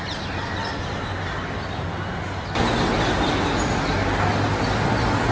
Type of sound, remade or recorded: recorded